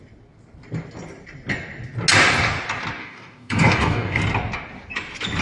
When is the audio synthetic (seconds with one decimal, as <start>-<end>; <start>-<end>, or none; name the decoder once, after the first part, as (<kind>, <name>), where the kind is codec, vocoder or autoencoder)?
3.0-4.2 (codec, DAC)